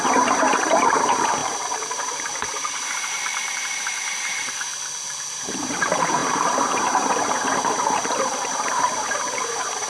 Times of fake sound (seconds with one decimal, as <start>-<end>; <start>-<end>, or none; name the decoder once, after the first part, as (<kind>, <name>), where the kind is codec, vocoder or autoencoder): 0.0-4.7 (vocoder, BigVGAN v2); 5.3-9.9

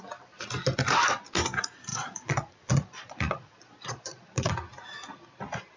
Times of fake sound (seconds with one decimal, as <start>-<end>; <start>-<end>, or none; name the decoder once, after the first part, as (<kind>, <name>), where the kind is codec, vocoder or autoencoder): 1.9-4.5 (vocoder, Vocos)

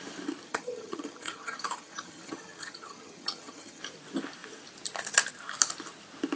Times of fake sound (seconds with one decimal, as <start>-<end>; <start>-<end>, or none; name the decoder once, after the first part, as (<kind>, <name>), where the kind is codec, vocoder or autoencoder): 0.5-3.8 (vocoder, HiFi-GAN)

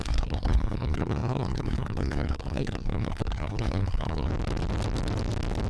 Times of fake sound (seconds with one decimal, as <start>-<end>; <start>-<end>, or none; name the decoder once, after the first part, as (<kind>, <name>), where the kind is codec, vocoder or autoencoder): 0.0-4.3 (codec, SNAC)